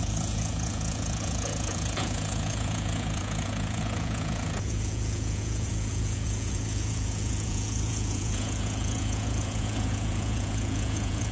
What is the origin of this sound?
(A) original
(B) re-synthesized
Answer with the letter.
B